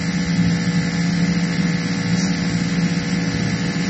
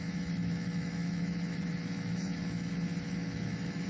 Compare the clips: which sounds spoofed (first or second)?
second